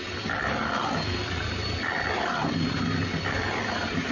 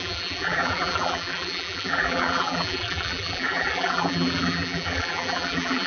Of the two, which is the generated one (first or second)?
second